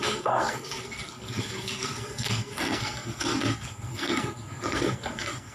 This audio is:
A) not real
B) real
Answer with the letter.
A